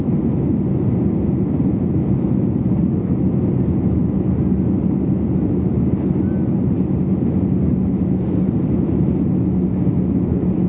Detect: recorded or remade recorded